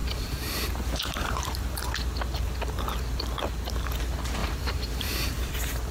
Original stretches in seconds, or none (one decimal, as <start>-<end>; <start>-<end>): 1.9-4.4; 5.5-5.9